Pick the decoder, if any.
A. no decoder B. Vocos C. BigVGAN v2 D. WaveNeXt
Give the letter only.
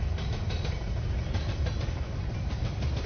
C